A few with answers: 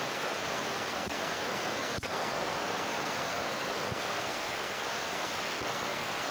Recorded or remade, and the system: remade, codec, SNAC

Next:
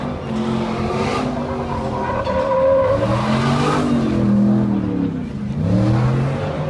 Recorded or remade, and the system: recorded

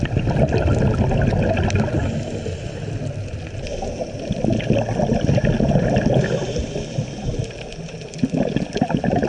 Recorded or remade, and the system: recorded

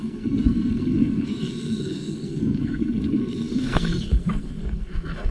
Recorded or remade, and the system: remade, codec, SNAC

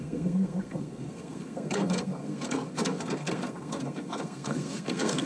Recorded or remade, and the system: remade, codec, SNAC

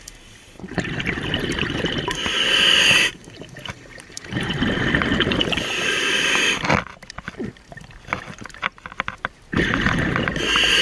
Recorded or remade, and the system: recorded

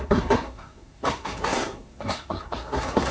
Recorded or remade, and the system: remade, codec, SNAC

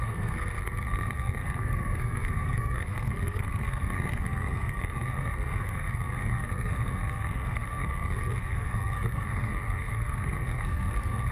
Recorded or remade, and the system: remade, codec, SNAC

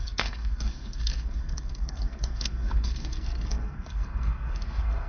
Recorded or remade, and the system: remade, codec, SNAC